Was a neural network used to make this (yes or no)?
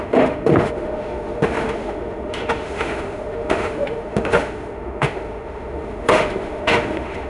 yes